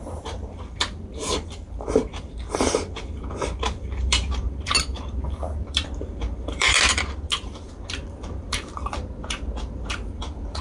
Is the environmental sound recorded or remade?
remade